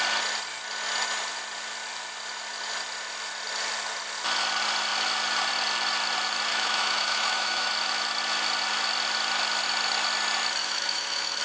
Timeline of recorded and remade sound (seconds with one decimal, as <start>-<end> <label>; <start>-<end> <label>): 0.0-6.5 recorded; 6.5-7.7 remade; 7.7-10.6 recorded; 10.6-11.4 remade